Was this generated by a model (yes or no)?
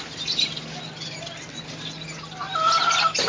no